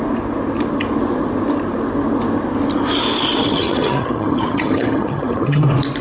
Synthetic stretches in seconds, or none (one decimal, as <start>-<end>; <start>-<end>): 3.4-5.6